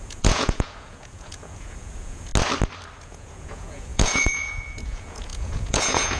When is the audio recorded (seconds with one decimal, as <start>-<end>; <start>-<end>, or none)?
2.3-3.0